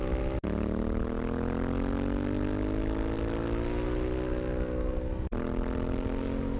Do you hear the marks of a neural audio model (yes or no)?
no